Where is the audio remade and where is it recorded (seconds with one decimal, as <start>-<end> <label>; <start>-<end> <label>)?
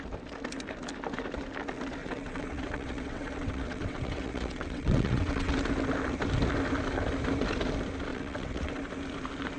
0.0-2.0 recorded; 2.0-5.5 remade; 5.5-8.1 recorded; 8.1-8.8 remade; 8.8-9.6 recorded